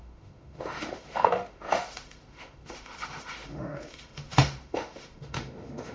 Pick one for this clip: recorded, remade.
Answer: remade